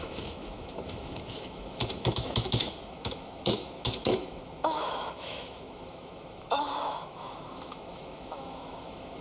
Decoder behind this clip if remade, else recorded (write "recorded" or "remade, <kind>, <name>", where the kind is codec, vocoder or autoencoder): remade, autoencoder, DAC-VAE